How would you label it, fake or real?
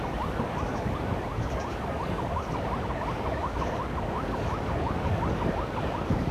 fake